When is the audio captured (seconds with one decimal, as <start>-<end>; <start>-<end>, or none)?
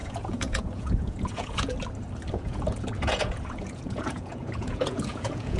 1.7-2.3